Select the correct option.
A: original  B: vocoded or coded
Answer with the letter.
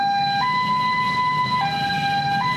A